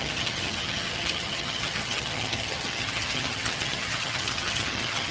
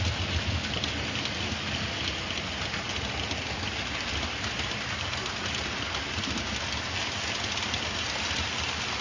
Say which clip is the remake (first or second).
first